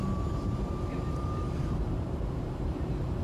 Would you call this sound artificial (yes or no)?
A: yes